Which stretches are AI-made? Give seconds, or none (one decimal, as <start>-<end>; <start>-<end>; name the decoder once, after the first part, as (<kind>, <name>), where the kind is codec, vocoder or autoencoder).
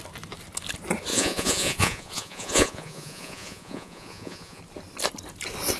1.1-4.6 (vocoder, Vocos)